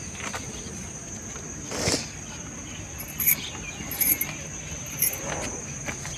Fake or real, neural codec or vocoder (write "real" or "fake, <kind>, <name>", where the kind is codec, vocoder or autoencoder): real